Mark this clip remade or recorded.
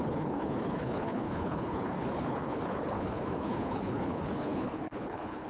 remade